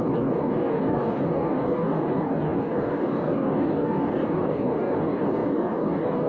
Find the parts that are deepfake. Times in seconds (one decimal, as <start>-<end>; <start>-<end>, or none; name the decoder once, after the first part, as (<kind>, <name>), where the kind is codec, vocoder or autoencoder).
0.0-6.3 (codec, DAC)